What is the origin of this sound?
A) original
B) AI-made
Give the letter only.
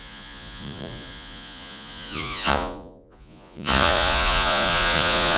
B